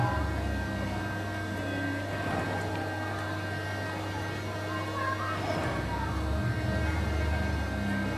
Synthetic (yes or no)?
no